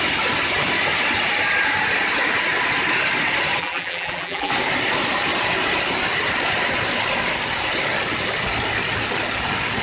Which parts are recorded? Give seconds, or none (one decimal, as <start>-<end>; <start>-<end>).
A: 0.0-3.6; 4.5-9.8